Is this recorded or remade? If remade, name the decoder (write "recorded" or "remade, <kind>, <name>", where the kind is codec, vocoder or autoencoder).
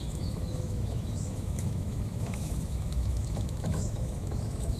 remade, autoencoder, DAC-VAE